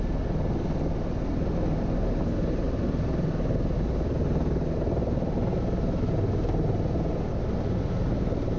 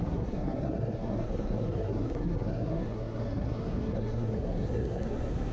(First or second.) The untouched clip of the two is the first